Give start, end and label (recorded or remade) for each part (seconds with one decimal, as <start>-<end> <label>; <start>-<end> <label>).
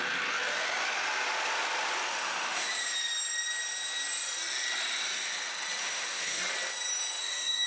0.0-2.1 recorded; 2.1-2.7 remade; 2.7-5.8 recorded; 5.8-6.4 remade; 6.4-7.2 recorded; 7.2-7.7 remade